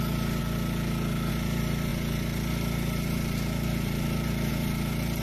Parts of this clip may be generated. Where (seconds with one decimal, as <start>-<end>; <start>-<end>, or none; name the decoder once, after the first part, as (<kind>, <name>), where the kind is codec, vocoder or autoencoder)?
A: 0.0-0.4 (vocoder, BigVGAN v2); 1.3-5.2